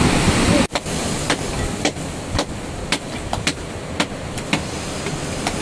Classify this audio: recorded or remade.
recorded